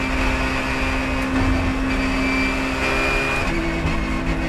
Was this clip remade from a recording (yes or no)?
no